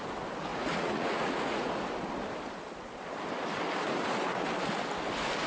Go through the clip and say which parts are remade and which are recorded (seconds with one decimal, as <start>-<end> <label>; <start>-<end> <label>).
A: 0.0-0.5 recorded; 0.5-1.7 remade; 1.7-5.5 recorded